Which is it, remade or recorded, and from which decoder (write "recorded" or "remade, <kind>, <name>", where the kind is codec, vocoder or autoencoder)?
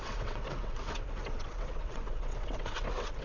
remade, vocoder, WaveNeXt